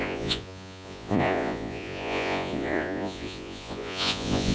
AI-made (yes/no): yes